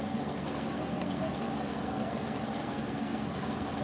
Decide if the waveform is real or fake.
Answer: fake